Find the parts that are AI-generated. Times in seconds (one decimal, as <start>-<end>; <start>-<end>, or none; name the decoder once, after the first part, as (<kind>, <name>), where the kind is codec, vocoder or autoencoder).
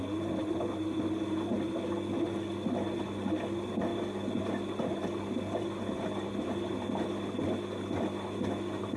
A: none